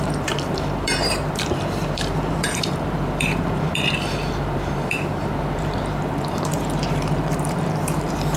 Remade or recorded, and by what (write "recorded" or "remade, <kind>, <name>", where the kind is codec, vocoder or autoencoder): remade, vocoder, BigVGAN v2